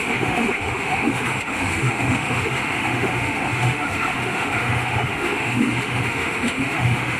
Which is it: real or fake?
fake